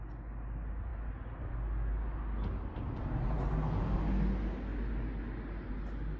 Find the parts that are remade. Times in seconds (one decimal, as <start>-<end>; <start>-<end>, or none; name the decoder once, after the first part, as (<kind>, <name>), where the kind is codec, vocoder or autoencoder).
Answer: none